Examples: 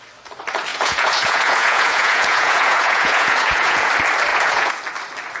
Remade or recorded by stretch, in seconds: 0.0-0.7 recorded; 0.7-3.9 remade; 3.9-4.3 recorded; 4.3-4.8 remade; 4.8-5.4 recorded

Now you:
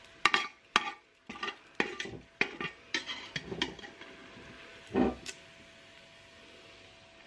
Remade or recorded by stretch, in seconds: 0.0-7.3 recorded

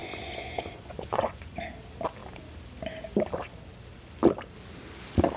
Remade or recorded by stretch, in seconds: 0.0-1.6 remade; 1.6-5.4 recorded

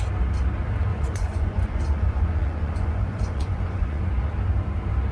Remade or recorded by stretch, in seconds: 0.0-0.9 recorded; 0.9-4.0 remade; 4.0-5.1 recorded

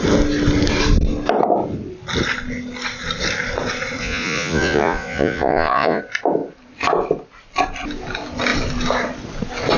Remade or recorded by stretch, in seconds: 0.0-4.0 recorded; 4.0-6.0 remade; 6.0-9.8 recorded

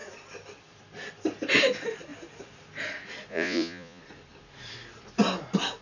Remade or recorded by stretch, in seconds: 0.0-3.3 recorded; 3.3-4.0 remade; 4.0-5.8 recorded

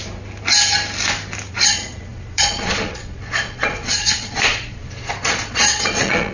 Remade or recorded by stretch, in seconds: 0.0-1.5 recorded; 1.5-6.3 remade

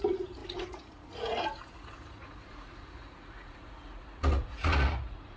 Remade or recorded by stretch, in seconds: 0.0-5.4 remade